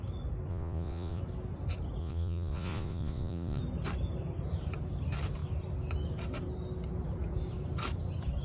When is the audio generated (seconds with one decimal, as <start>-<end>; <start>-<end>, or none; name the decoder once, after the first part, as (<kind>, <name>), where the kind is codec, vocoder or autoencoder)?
0.5-1.2 (vocoder, Vocos); 2.0-3.6